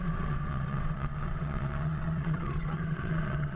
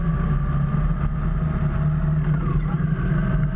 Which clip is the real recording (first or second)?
second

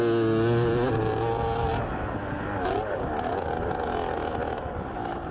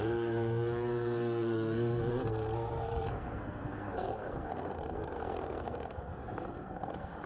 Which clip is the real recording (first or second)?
first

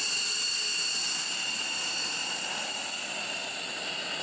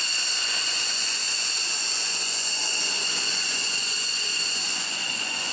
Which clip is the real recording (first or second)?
first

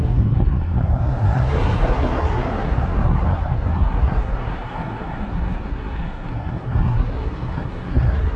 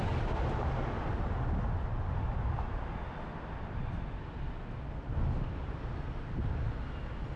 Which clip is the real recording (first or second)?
second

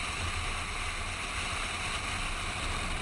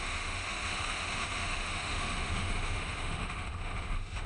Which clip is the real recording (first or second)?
first